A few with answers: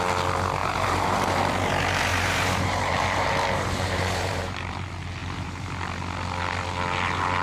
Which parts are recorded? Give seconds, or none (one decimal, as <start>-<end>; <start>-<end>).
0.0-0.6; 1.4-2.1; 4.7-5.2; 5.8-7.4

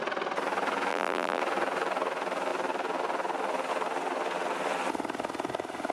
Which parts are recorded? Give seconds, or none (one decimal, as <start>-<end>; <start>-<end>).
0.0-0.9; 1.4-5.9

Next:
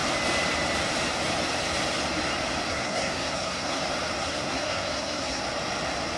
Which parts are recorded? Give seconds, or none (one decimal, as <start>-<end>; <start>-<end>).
0.0-2.7; 3.8-4.2; 5.4-6.2

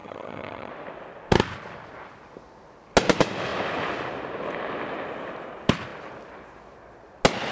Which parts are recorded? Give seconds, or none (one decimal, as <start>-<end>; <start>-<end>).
0.7-7.5

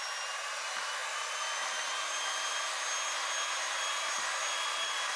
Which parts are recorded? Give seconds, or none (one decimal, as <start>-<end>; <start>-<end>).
0.0-5.2